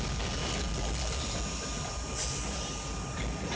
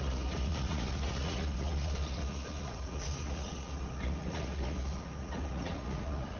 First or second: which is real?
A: first